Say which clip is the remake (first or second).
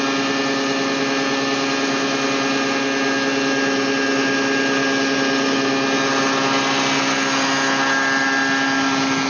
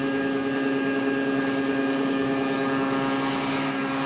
second